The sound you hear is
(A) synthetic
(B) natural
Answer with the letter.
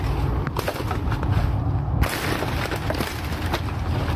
B